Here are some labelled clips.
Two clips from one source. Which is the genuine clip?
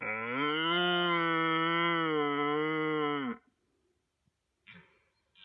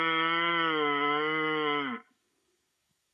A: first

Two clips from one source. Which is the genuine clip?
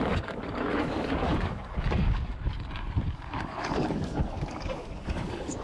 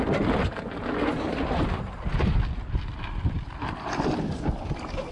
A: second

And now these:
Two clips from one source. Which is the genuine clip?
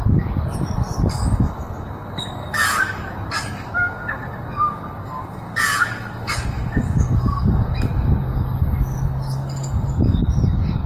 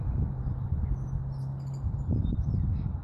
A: second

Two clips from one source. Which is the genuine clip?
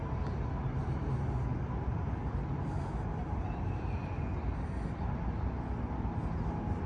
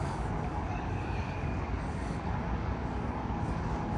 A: first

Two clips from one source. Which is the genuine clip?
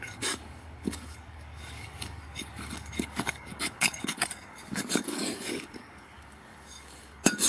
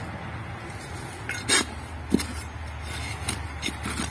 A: second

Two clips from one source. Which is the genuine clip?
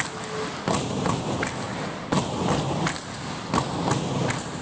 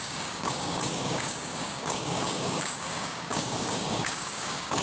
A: first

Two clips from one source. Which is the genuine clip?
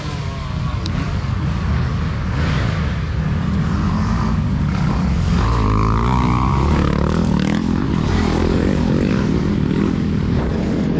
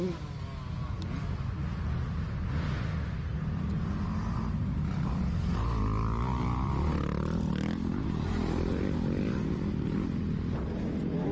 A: second